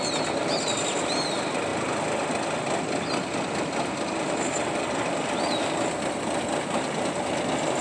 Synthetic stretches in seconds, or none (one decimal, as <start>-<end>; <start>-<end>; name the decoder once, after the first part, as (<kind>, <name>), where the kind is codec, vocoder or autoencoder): none